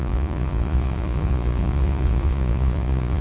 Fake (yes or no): yes